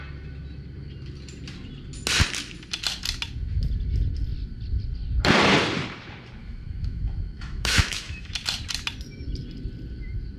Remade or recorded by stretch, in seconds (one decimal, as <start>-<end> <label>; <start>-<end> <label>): 0.0-6.4 recorded; 6.4-8.3 remade; 8.3-10.4 recorded